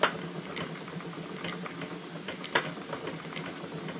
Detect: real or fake real